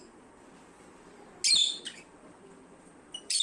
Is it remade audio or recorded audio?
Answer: recorded